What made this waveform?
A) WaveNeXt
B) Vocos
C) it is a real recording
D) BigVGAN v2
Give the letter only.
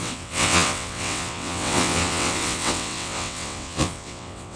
A